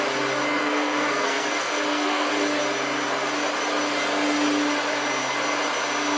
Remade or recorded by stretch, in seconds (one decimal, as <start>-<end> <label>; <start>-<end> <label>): 0.0-0.6 recorded; 0.6-2.3 remade; 2.3-6.2 recorded